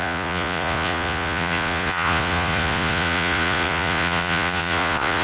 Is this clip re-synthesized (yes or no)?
yes